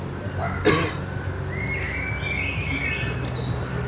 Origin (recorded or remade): recorded